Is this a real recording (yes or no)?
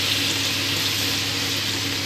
yes